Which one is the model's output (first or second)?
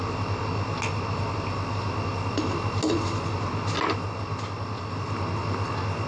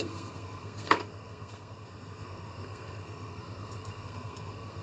second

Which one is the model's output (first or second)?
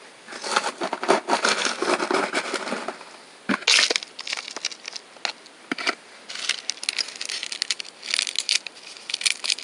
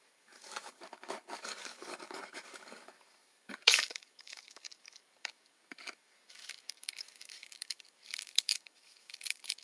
second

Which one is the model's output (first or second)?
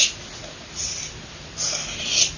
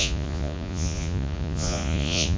second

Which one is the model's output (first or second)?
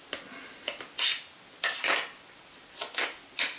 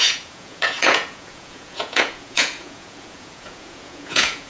second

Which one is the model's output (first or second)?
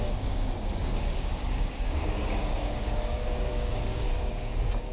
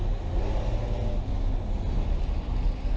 first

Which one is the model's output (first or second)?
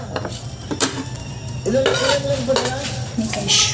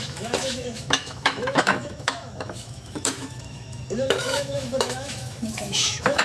second